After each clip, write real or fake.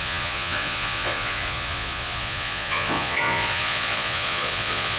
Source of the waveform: fake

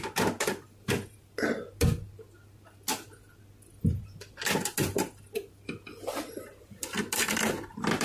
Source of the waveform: real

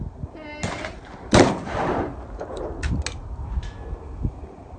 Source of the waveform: real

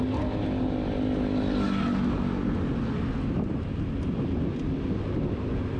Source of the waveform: real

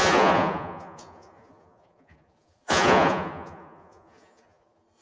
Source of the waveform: fake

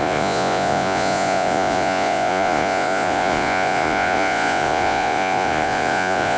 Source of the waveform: fake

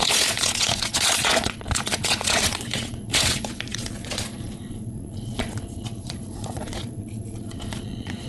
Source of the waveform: fake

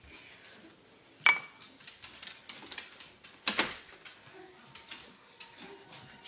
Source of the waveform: real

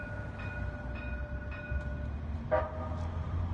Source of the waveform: real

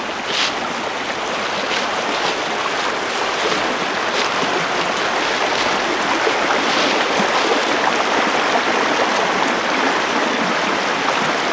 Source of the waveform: real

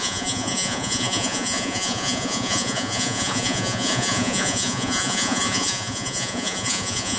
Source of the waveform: fake